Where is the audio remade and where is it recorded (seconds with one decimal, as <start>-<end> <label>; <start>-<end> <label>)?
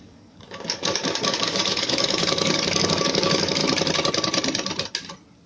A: 0.0-3.6 remade; 3.6-5.5 recorded